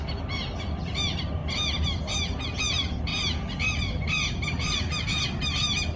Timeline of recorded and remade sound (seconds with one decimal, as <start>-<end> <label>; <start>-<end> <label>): 0.0-6.0 recorded